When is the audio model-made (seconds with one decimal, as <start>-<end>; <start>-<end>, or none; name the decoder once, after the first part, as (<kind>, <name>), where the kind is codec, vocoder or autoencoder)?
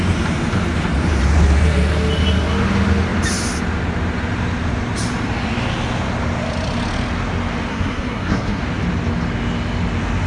7.7-8.6 (codec, SNAC)